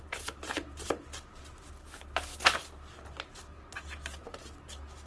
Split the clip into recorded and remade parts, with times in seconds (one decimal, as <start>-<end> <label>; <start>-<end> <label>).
0.0-5.1 recorded